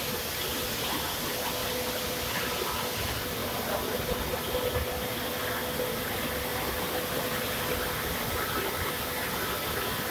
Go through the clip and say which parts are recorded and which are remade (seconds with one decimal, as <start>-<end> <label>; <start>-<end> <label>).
0.0-10.1 recorded